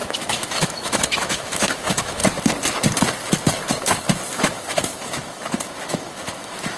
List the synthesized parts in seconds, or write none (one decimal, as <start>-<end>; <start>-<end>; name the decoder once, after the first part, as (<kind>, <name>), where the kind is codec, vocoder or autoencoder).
0.0-2.2 (autoencoder, DAC-VAE); 4.3-6.8